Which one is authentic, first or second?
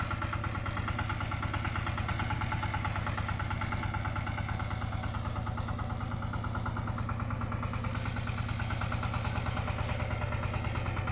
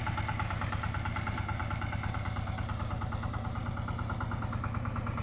first